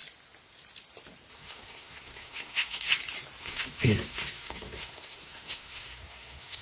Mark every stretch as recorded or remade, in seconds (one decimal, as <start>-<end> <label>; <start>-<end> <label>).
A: 0.0-1.3 recorded; 1.3-2.9 remade; 2.9-3.4 recorded; 3.4-6.6 remade